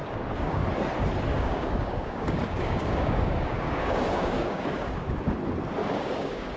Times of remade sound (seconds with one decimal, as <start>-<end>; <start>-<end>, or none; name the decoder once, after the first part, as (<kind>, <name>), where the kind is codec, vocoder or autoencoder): 0.0-0.7 (codec, DAC); 1.3-5.3; 5.8-6.6